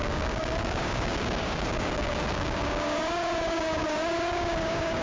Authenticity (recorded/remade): remade